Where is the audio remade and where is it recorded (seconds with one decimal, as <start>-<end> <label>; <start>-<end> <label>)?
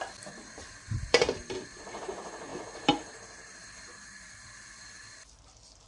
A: 0.0-5.9 remade